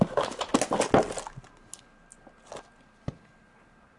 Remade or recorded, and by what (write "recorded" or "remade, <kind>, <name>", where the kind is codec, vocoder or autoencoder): recorded